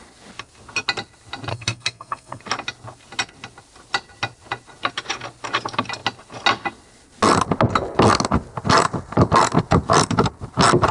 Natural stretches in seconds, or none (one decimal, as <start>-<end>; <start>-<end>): 0.0-1.5; 2.4-10.9